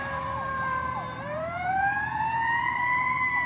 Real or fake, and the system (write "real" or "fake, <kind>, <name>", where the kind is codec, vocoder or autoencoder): fake, vocoder, BigVGAN v2